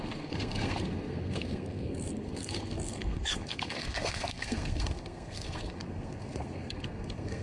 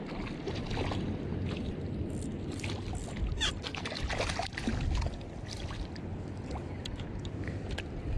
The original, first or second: second